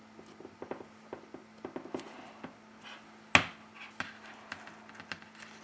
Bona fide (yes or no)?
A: yes